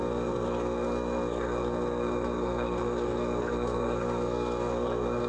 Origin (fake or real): fake